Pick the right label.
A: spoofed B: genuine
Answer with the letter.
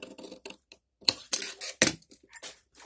B